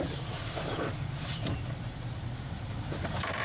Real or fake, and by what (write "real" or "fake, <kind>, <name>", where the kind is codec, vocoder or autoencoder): fake, vocoder, BigVGAN v2